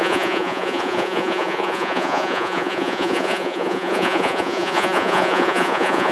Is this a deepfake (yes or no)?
yes